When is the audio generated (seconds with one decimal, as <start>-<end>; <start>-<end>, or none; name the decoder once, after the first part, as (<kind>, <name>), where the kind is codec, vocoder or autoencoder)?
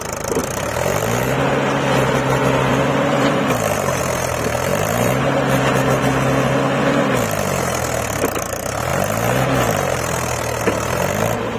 2.7-4.0 (vocoder, BigVGAN v2); 4.7-5.2